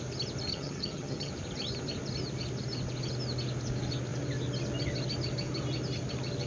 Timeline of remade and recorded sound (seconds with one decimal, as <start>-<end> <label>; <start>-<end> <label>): 0.0-0.5 recorded; 0.5-1.3 remade; 1.3-6.5 recorded